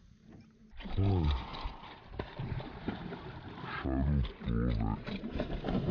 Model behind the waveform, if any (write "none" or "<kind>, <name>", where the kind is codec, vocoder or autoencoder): vocoder, BigVGAN v2